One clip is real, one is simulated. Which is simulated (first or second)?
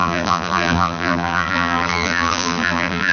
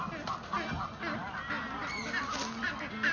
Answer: first